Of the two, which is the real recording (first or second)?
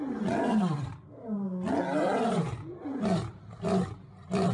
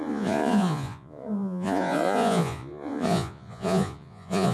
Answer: first